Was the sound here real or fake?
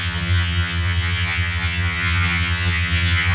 fake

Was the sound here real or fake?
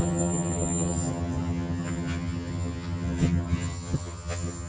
fake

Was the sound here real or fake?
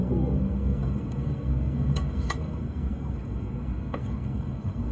fake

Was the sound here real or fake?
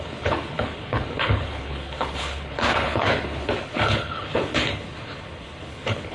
fake